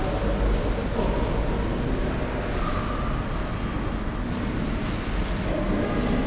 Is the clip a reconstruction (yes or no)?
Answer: no